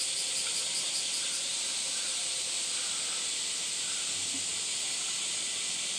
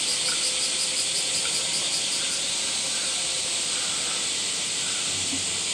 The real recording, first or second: second